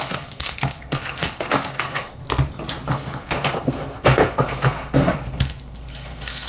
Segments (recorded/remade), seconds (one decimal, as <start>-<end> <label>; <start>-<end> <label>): 0.0-2.2 remade; 2.2-2.9 recorded; 2.9-6.5 remade

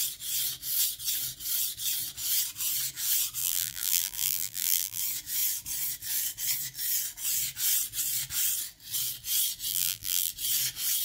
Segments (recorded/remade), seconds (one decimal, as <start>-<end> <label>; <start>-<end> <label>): 0.0-3.4 recorded; 3.4-5.0 remade; 5.0-9.7 recorded; 9.7-10.3 remade; 10.3-11.0 recorded

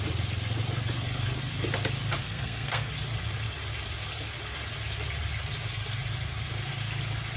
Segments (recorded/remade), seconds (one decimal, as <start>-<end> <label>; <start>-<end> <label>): 0.0-2.2 recorded; 2.2-2.9 remade; 2.9-7.4 recorded

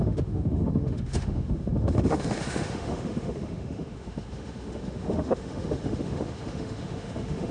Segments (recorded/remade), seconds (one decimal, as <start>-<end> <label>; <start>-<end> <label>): 0.0-7.5 remade

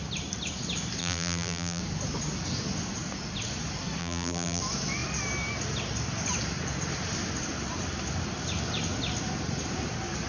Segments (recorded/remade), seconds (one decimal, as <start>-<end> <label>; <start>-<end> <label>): 0.0-1.0 recorded; 1.0-1.8 remade; 1.8-4.0 recorded; 4.0-4.6 remade; 4.6-10.3 recorded

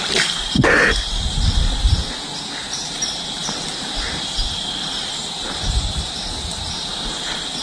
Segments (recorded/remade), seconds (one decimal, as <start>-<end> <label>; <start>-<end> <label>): 0.0-7.6 recorded